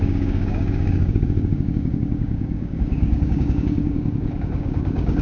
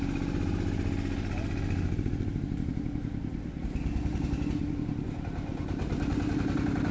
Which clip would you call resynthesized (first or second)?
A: first